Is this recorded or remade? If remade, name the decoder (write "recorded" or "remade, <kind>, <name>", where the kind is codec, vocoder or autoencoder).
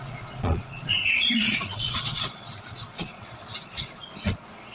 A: remade, vocoder, Vocos